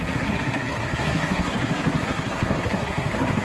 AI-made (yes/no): yes